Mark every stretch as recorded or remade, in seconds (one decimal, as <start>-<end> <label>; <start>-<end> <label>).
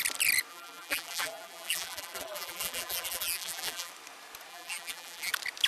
0.0-0.5 recorded; 0.5-3.9 remade; 3.9-4.5 recorded; 4.5-5.3 remade; 5.3-5.7 recorded